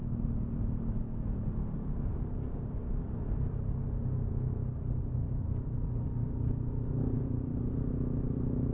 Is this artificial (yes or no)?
no